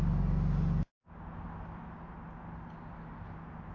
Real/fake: real